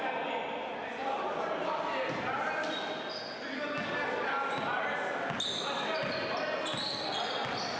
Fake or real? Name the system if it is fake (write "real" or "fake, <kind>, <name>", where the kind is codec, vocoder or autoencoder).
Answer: real